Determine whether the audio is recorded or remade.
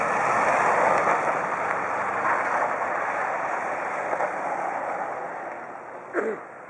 recorded